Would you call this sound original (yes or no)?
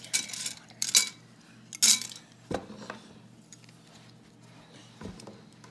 yes